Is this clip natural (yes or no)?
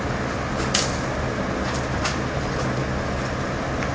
yes